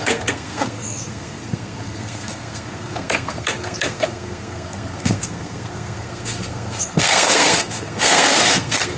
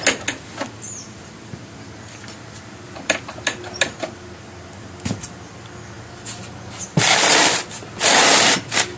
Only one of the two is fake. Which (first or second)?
first